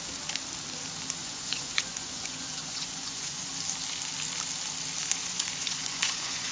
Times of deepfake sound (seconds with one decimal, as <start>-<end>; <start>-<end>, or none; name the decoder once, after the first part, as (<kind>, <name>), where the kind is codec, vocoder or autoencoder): 1.2-3.5 (vocoder, Vocos); 5.2-6.5